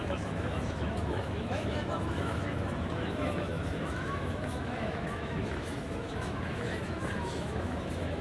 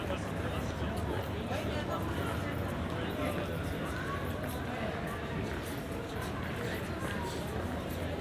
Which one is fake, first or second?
first